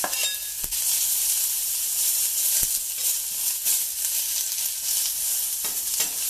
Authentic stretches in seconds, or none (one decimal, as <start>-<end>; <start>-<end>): 0.0-0.7; 2.3-6.3